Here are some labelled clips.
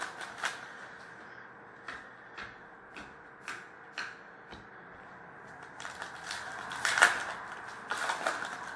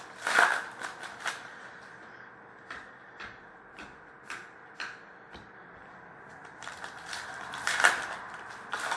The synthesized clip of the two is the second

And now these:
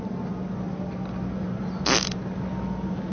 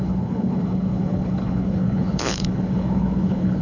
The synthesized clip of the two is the second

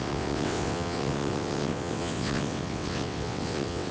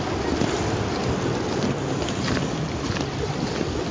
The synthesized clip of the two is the first